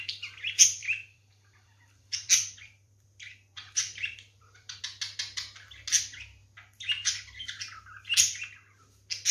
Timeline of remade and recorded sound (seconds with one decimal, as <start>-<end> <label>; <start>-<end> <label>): 0.0-0.8 recorded; 0.8-4.8 remade; 4.8-9.3 recorded